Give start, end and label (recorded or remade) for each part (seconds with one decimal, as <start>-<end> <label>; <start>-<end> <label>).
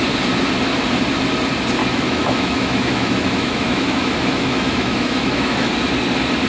0.0-1.8 recorded; 1.8-5.7 remade; 5.7-6.5 recorded